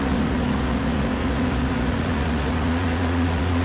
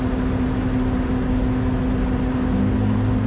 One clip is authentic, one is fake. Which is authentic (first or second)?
second